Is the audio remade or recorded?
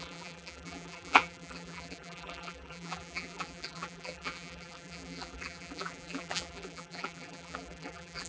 remade